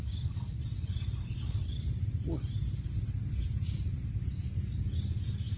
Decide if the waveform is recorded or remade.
recorded